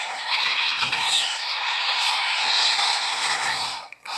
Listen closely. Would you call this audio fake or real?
fake